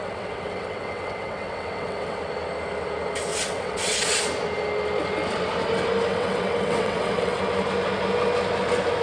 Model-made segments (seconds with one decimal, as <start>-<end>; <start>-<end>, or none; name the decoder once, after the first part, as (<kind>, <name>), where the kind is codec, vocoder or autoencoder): 0.0-2.2 (vocoder, WaveNeXt); 3.3-4.2; 6.1-7.4